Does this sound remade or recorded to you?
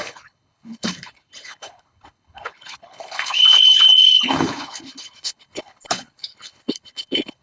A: remade